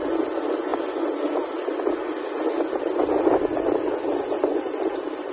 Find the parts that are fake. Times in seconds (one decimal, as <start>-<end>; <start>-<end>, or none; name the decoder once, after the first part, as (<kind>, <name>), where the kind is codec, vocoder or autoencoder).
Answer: none